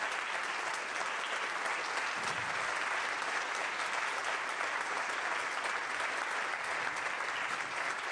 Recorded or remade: recorded